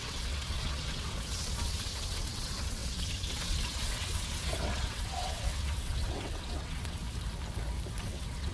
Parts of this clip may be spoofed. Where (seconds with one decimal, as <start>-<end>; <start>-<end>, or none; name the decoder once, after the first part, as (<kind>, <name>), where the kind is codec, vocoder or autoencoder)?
0.0-7.0 (vocoder, WaveNeXt); 8.0-8.5